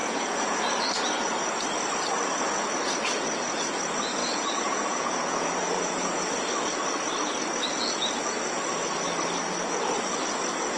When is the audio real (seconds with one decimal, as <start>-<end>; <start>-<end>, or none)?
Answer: 0.6-4.2; 6.3-10.8